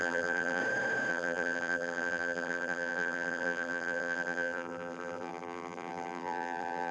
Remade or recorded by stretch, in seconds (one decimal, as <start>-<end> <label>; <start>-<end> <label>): 0.0-0.6 remade; 0.6-1.1 recorded; 1.1-6.9 remade